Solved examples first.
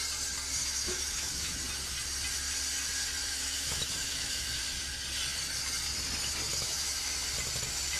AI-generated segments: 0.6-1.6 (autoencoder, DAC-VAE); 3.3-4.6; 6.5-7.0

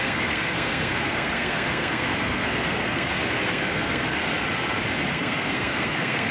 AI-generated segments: 0.0-4.2 (codec, SNAC); 5.1-6.3

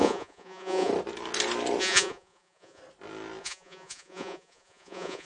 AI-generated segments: 0.0-0.9 (vocoder, Vocos); 1.8-2.8; 3.4-5.2

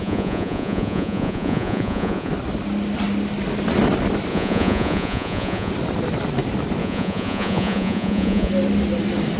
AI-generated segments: 0.0-2.3 (vocoder, Vocos); 4.3-5.7; 6.8-8.5